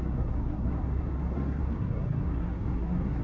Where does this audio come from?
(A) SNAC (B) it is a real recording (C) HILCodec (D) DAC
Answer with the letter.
A